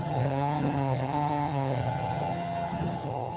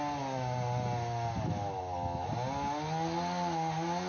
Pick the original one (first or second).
second